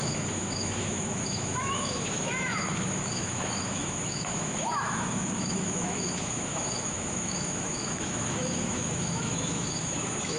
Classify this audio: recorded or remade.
remade